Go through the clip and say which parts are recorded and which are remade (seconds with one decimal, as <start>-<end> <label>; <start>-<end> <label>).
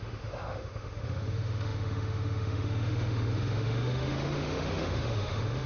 0.0-5.7 remade